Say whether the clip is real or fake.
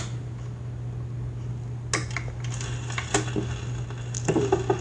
real